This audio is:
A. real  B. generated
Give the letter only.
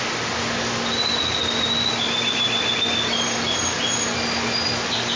A